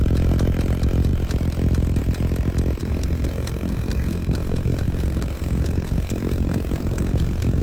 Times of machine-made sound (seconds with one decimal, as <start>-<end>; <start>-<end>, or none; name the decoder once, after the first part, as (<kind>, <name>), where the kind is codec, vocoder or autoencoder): 2.8-7.6 (codec, SNAC)